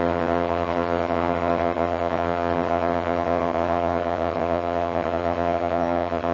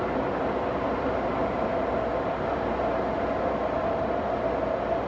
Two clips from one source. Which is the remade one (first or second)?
first